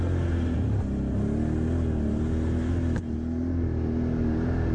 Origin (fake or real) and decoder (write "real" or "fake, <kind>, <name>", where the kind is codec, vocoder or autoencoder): real